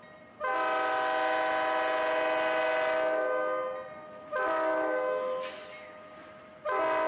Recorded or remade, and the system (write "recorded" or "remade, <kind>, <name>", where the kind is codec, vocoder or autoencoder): recorded